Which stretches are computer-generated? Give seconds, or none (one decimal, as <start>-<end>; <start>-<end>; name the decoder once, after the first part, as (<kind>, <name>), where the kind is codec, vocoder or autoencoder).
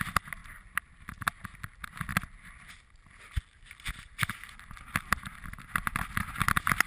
none